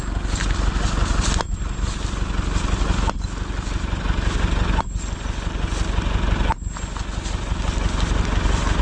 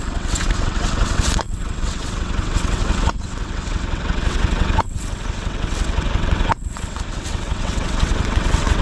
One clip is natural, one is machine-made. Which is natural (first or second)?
first